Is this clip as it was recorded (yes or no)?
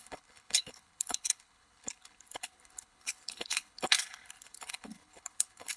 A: no